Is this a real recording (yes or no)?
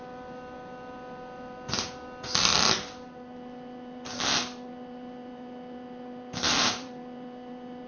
no